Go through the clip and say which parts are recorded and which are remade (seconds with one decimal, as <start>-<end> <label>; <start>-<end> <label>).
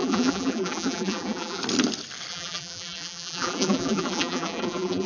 0.0-1.6 remade; 1.6-2.3 recorded; 2.3-5.1 remade